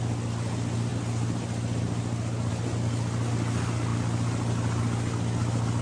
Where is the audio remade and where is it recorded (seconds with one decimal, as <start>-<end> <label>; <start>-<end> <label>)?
0.0-5.8 recorded